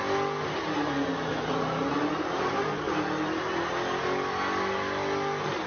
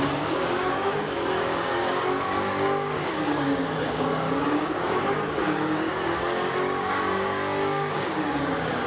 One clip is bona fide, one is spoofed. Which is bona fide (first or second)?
first